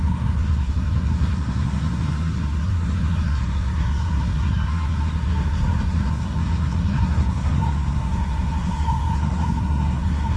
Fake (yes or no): yes